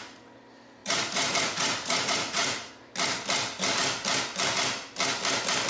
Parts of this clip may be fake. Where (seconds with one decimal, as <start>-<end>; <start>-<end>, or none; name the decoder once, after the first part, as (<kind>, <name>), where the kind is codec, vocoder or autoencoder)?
0.8-2.7 (vocoder, Vocos)